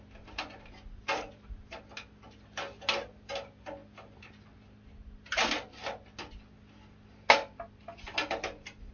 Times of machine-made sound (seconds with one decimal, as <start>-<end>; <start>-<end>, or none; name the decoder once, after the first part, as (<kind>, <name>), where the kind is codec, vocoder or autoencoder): none